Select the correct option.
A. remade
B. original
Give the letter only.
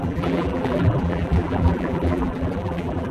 A